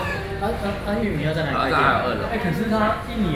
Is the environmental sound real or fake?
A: real